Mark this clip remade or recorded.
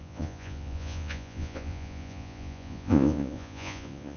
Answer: remade